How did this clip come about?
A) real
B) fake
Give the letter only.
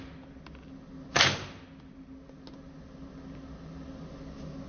A